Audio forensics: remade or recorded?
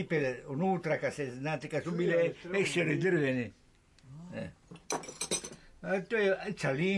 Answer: recorded